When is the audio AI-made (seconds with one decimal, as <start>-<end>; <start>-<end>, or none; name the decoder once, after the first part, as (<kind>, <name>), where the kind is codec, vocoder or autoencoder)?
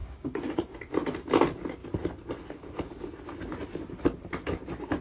0.0-0.8 (codec, DAC)